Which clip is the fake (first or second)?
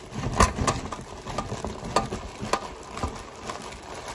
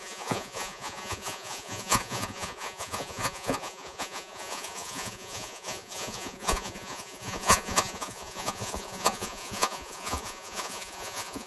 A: second